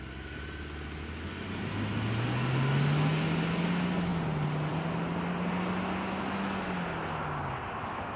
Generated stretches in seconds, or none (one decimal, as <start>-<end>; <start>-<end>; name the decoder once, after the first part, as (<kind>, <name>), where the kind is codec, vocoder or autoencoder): none

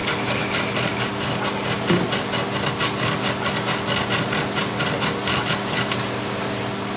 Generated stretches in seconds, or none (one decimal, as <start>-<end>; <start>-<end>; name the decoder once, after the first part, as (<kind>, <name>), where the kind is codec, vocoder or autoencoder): none

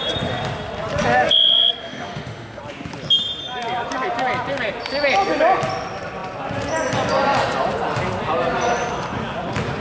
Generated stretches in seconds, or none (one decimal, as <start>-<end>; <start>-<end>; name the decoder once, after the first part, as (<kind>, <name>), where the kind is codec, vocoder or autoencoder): 1.8-2.6 (autoencoder, DAC-VAE)

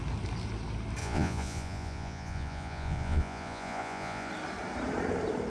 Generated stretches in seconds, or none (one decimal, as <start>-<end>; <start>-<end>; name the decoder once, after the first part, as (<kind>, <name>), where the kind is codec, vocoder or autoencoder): 1.0-4.3 (vocoder, Vocos)

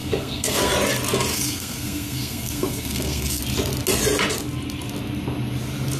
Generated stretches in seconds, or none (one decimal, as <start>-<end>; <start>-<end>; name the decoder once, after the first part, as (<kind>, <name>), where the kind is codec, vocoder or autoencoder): 0.0-0.7 (codec, SNAC); 1.3-3.4

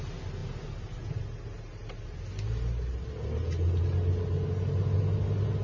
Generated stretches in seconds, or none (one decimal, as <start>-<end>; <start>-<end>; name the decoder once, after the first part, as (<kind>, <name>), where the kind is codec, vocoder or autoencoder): none

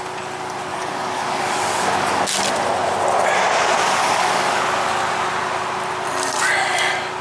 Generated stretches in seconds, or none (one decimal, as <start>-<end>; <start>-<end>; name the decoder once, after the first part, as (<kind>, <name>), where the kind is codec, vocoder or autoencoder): 0.7-2.2 (codec, DAC); 4.0-4.6

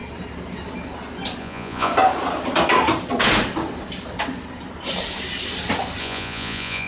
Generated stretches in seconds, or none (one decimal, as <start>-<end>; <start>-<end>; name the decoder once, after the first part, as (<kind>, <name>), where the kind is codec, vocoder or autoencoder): 1.4-1.9 (vocoder, Vocos); 6.0-6.9